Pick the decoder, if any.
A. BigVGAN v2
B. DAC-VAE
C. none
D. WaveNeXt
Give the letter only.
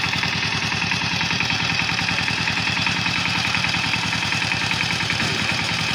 A